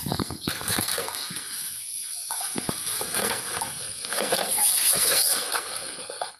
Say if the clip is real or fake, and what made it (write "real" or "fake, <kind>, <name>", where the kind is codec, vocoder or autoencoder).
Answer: fake, codec, SNAC